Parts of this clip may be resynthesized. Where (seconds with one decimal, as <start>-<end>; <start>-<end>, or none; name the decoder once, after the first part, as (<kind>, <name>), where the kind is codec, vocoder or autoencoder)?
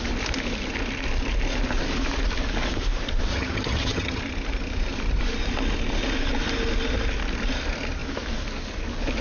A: 3.3-4.2 (vocoder, HiFi-GAN)